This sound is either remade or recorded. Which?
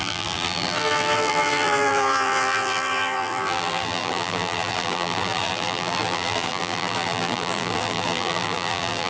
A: remade